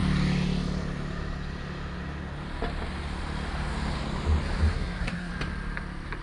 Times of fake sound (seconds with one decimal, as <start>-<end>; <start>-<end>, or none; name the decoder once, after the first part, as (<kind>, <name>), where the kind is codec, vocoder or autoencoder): 4.7-5.3 (codec, SNAC)